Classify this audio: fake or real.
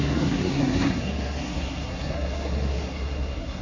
fake